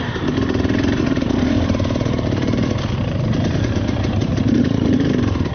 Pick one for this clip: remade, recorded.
remade